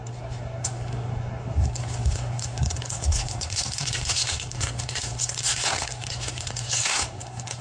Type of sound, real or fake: fake